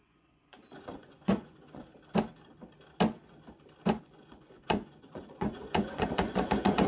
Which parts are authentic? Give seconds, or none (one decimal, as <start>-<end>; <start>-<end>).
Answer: 1.9-4.0